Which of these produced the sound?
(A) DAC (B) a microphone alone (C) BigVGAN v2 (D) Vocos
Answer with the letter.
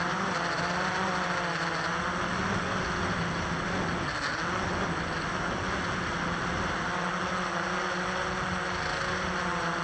B